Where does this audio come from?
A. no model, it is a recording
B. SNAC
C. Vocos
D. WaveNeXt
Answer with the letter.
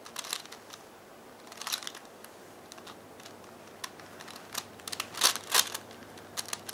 A